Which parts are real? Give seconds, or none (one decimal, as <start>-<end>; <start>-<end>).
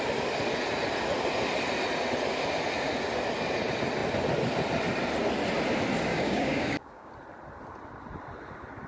0.0-6.1; 7.1-8.9